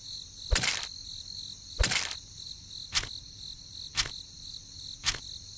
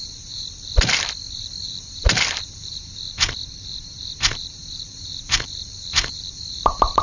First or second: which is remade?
second